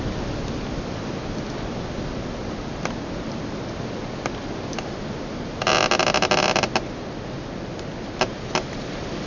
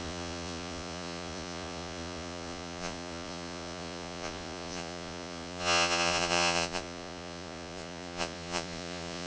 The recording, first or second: first